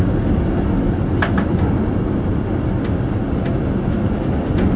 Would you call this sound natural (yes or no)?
yes